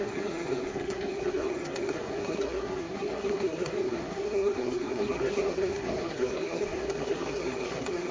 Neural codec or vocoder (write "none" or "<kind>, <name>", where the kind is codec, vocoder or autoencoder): codec, SNAC